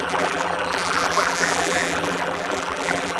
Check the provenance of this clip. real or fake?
fake